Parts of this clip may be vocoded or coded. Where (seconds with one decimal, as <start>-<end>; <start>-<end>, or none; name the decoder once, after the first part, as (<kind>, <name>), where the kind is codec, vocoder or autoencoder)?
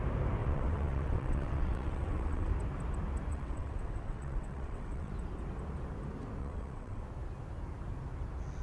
0.4-2.5 (vocoder, WaveNeXt); 3.3-5.1; 6.4-7.0